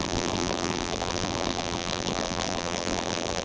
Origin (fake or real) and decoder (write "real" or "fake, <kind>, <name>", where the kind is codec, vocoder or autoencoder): fake, vocoder, BigVGAN v2